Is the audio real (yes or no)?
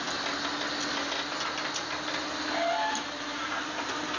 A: yes